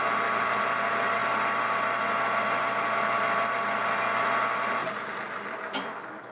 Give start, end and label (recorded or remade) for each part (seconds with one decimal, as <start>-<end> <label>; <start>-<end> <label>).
0.0-6.3 recorded

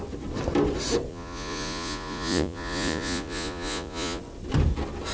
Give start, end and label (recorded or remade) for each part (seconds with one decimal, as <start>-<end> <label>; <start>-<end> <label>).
0.0-1.1 recorded; 1.1-4.2 remade; 4.2-5.1 recorded

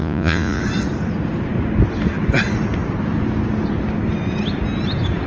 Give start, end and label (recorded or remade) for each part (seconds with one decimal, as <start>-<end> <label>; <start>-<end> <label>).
0.0-0.6 remade; 0.6-5.3 recorded

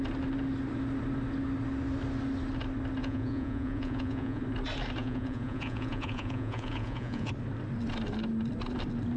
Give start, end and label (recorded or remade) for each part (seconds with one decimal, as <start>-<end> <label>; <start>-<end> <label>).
0.0-3.0 recorded; 3.0-4.4 remade; 4.4-5.0 recorded; 5.0-7.3 remade; 7.3-9.2 recorded